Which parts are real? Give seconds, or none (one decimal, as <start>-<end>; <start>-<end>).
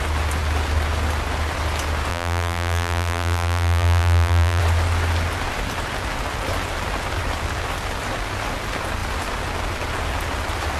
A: 0.0-2.1; 4.6-10.8